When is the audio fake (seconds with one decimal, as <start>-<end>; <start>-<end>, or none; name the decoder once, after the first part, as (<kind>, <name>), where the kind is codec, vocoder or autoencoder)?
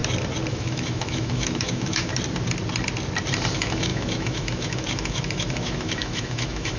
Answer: 0.5-2.1 (autoencoder, DAC-VAE); 3.5-6.8